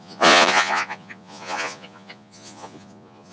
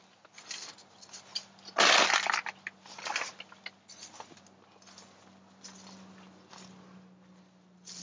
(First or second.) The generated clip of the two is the first